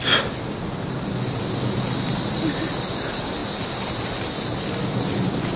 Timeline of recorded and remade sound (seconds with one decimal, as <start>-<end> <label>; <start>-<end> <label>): 0.0-5.6 recorded